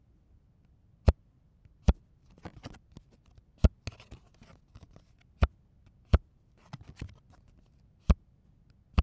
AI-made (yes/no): no